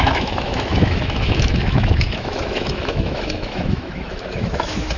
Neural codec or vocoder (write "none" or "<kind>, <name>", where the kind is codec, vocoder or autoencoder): autoencoder, DAC-VAE